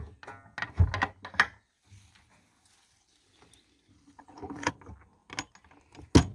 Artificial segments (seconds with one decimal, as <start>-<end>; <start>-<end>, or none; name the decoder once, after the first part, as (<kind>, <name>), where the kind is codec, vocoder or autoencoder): 3.9-4.7 (codec, HILCodec)